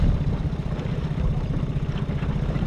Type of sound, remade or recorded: recorded